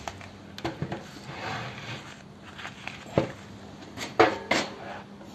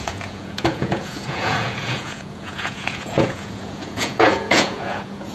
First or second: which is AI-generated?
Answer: second